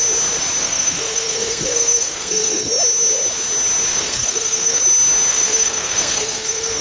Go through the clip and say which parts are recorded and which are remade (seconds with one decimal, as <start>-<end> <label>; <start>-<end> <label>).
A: 0.0-0.6 recorded; 0.6-2.7 remade; 2.7-3.9 recorded; 3.9-4.8 remade; 4.8-5.3 recorded; 5.3-6.8 remade